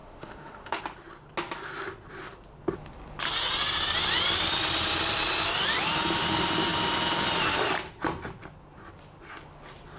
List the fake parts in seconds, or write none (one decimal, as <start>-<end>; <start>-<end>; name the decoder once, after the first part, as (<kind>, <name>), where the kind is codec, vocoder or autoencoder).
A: 0.0-0.8 (autoencoder, DAC-VAE)